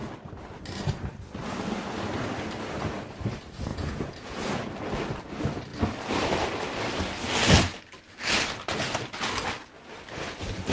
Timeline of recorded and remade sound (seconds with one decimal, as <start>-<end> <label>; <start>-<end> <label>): 0.0-3.7 recorded; 3.7-4.7 remade; 4.7-10.7 recorded

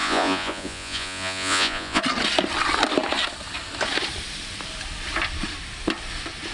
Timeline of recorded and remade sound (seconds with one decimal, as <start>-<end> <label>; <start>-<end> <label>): 0.0-2.0 remade; 2.0-6.5 recorded

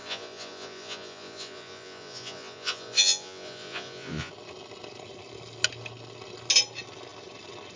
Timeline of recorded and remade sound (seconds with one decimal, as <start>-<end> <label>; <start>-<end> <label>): 0.0-4.3 remade; 4.3-7.8 recorded

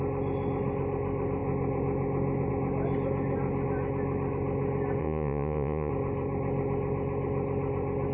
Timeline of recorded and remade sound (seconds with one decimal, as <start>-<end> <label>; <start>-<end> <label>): 0.0-5.0 recorded; 5.0-5.9 remade; 5.9-8.1 recorded

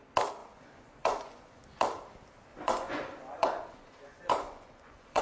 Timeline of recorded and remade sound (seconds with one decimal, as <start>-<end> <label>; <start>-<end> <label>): 0.0-0.4 recorded; 0.4-1.6 remade; 1.6-2.5 recorded; 2.5-5.2 remade